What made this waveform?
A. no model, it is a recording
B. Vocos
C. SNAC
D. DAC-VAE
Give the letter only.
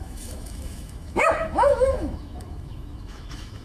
D